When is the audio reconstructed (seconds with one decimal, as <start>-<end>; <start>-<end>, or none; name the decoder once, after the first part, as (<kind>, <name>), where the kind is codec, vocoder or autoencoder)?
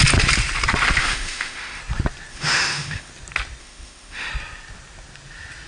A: 1.0-1.8 (autoencoder, DAC-VAE); 2.3-3.1; 3.6-4.3